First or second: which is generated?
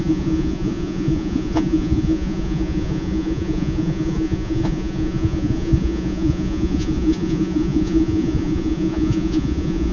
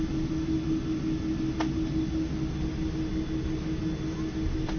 first